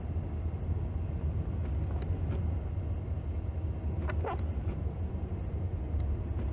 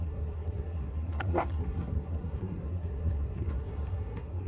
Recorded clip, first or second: first